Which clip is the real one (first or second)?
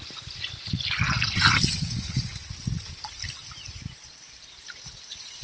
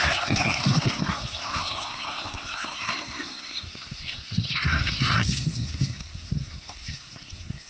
first